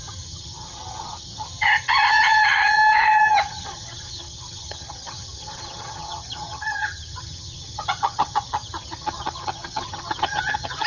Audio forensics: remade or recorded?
remade